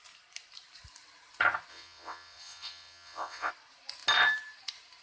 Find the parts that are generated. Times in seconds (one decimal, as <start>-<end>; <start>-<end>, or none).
1.7-3.5